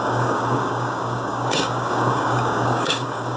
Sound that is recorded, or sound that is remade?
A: remade